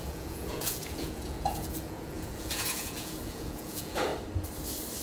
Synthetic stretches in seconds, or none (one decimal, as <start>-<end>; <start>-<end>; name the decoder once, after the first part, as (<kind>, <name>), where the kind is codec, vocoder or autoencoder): 0.0-4.1 (vocoder, Vocos)